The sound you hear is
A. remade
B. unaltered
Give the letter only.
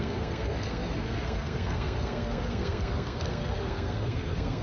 A